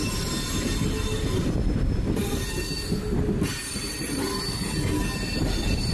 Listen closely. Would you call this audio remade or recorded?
recorded